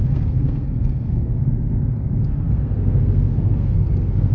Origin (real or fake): fake